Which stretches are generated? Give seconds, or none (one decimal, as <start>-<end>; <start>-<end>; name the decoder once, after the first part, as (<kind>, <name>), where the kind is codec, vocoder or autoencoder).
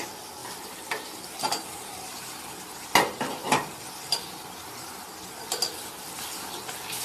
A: 0.4-1.9 (vocoder, BigVGAN v2); 3.4-5.1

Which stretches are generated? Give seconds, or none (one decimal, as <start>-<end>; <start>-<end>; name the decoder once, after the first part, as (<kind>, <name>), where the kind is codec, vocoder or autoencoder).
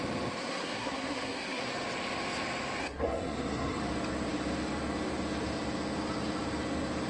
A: 0.4-1.6 (codec, SNAC); 2.8-3.8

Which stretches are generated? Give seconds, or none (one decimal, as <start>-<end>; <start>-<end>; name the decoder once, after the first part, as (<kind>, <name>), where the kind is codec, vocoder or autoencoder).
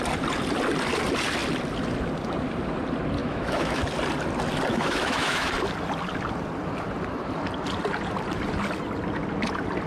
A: 3.2-3.8 (autoencoder, DAC-VAE); 4.7-5.5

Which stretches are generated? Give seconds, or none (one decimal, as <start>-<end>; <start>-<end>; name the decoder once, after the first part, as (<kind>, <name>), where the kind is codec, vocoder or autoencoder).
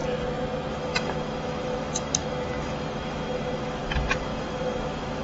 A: 0.7-5.2 (autoencoder, DAC-VAE)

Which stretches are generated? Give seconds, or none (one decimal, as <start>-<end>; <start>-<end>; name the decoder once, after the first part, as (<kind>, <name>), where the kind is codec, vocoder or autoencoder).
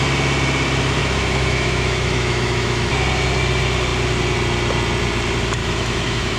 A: 1.0-2.9 (autoencoder, DAC-VAE); 5.6-6.4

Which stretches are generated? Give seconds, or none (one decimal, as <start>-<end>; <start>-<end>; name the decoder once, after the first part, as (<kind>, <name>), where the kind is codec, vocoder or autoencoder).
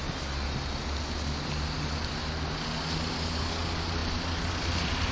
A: none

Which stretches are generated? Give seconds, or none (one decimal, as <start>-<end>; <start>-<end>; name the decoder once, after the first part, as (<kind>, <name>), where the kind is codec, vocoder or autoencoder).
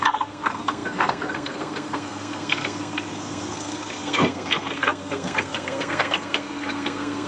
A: 0.0-7.3 (codec, SNAC)